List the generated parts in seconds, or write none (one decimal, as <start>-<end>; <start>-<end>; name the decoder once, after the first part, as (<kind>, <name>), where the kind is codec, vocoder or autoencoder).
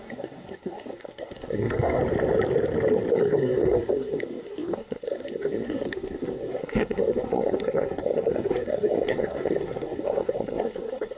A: 0.0-2.0 (codec, SNAC); 3.1-11.2